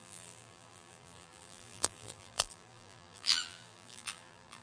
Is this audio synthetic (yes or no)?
yes